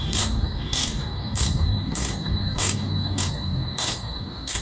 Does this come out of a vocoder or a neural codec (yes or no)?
yes